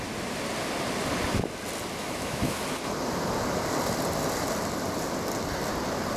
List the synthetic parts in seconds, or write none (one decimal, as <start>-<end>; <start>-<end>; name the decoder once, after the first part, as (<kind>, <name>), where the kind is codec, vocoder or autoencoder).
2.0-2.6 (autoencoder, DAC-VAE)